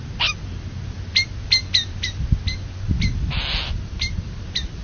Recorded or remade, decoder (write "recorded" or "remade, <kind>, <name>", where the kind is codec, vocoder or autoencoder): recorded